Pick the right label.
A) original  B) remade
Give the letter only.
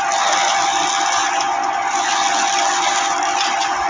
A